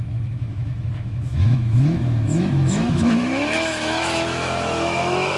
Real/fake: fake